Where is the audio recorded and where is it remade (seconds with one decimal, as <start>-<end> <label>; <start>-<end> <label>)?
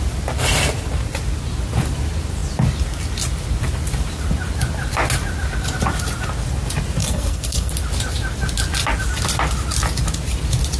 0.0-7.0 recorded; 7.0-7.7 remade; 7.7-10.8 recorded